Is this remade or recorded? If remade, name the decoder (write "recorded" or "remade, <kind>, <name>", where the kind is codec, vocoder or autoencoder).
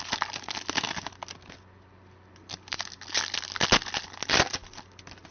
recorded